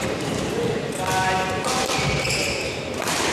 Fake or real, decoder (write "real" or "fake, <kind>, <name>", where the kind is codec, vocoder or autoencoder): real